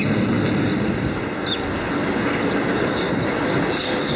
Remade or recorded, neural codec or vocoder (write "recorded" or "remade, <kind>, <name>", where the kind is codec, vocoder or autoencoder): recorded